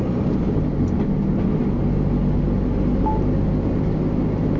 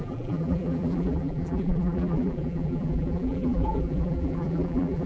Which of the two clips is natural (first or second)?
first